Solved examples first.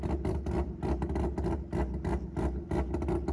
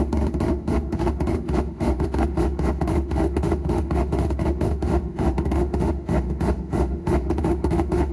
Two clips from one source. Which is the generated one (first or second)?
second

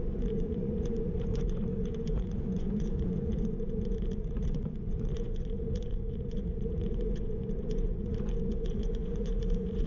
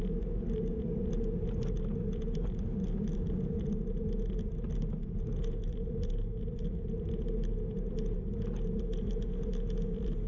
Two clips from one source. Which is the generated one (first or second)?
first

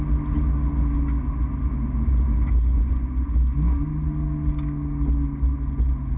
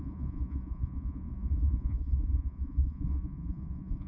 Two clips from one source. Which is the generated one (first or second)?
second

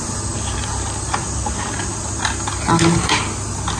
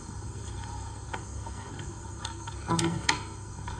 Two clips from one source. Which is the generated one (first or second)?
second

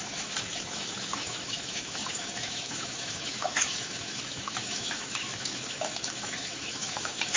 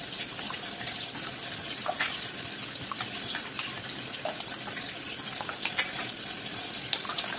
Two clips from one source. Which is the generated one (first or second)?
first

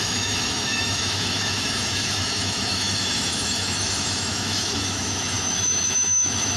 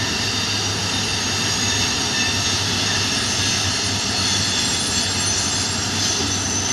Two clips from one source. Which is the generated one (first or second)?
first